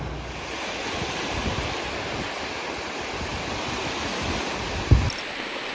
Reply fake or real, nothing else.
real